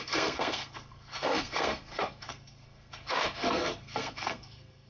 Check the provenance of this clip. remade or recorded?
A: remade